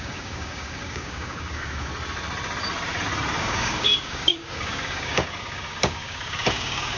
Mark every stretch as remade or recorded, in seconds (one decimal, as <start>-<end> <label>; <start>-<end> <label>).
0.0-1.9 remade; 1.9-3.4 recorded; 3.4-7.0 remade